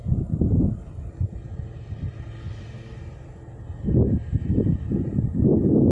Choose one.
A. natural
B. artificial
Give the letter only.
A